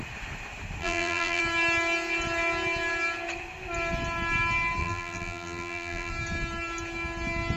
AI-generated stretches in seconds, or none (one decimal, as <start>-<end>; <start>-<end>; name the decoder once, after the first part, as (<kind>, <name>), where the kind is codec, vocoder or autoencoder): 0.8-1.4 (vocoder, BigVGAN v2); 4.8-6.1